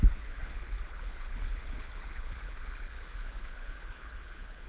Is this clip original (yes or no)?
no